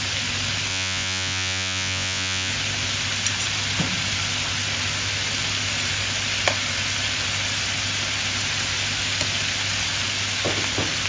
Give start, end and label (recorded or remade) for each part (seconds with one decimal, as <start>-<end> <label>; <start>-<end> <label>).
0.0-0.7 recorded; 0.7-2.5 remade; 2.5-11.1 recorded